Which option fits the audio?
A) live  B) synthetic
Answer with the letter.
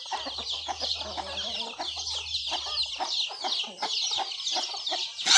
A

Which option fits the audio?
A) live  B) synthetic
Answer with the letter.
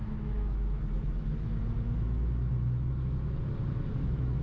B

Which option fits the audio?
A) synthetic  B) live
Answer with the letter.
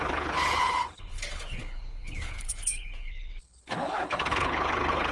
A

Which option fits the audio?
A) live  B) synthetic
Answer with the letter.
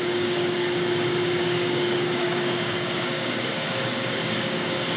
B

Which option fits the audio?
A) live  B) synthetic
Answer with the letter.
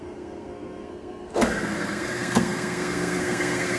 B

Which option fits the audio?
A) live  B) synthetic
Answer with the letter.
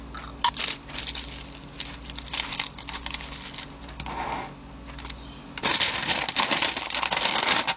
A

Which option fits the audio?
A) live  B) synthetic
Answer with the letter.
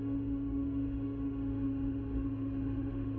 B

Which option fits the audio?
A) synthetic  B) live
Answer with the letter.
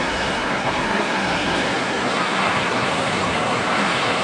A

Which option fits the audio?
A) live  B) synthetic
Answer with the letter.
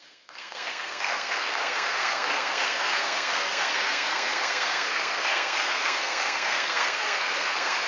B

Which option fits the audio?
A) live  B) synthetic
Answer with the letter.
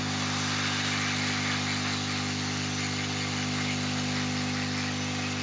A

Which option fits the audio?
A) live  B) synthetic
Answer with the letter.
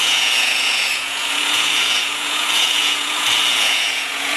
B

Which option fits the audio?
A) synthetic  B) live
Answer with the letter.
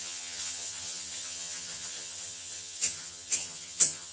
A